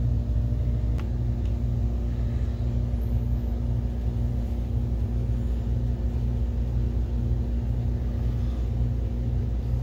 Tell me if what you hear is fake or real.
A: real